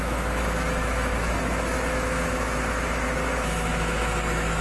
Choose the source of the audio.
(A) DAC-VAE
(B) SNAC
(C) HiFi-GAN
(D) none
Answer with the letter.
A